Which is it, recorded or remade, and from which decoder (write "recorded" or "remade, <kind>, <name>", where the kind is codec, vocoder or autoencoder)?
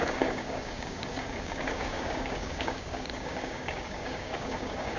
remade, codec, DAC